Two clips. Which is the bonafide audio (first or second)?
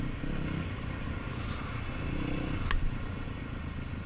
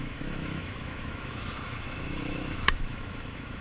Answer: first